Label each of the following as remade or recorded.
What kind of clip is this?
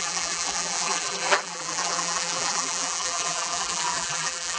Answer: remade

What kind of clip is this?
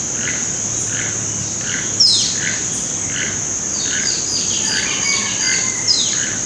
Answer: recorded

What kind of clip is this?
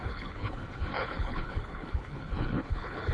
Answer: remade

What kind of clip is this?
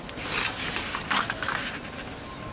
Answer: recorded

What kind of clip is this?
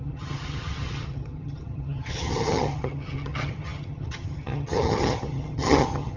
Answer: remade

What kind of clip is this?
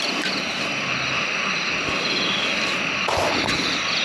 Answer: recorded